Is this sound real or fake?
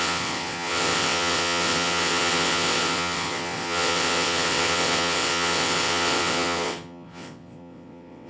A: fake